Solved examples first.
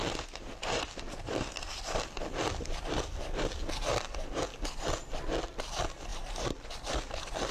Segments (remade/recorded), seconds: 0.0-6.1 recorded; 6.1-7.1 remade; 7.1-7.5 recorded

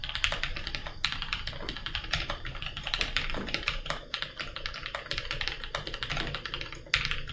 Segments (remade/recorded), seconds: 0.0-1.8 recorded; 1.8-4.2 remade; 4.2-7.3 recorded

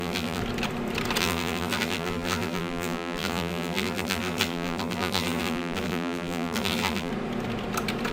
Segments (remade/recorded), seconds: 0.0-0.4 remade; 0.4-1.2 recorded; 1.2-7.1 remade; 7.1-8.1 recorded